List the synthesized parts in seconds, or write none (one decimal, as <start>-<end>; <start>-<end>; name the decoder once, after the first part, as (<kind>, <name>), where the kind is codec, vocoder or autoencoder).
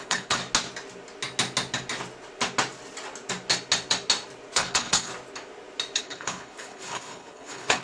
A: 0.0-0.4 (codec, HILCodec); 4.5-5.1; 6.0-7.8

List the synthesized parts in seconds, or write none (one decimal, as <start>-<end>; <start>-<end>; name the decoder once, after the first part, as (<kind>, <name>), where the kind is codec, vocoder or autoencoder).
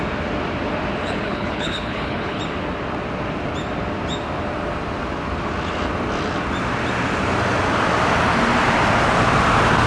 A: 1.0-2.4 (codec, HILCodec)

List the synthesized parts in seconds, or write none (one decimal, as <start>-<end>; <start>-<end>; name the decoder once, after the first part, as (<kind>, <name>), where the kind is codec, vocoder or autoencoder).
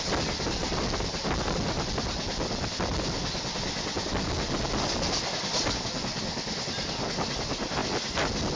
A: none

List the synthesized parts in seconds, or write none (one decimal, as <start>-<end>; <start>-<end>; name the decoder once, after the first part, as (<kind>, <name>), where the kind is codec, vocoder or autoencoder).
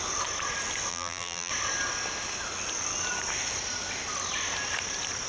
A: 0.9-1.5 (vocoder, BigVGAN v2)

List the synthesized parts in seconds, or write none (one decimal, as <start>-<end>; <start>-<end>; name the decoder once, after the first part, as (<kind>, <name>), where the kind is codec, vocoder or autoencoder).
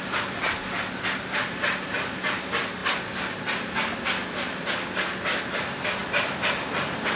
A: none